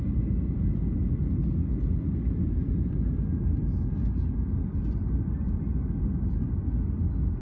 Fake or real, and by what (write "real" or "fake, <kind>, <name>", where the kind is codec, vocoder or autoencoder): real